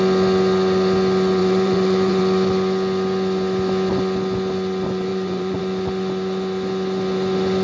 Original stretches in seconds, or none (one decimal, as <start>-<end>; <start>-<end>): 0.0-1.4; 2.2-5.1; 5.6-7.6